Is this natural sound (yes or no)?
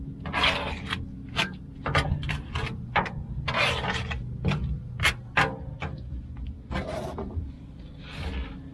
yes